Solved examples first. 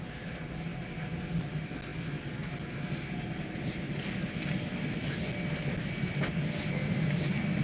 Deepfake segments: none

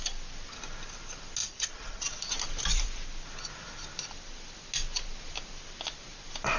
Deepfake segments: 1.4-2.3

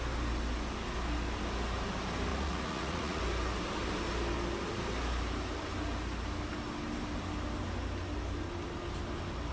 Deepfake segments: 2.3-3.2

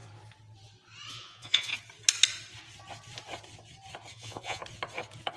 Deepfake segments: 1.1-1.7; 4.1-4.6

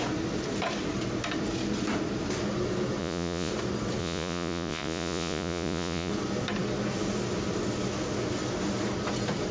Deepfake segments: 3.0-3.5; 4.0-6.1

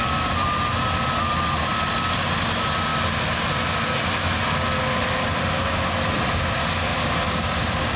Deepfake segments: none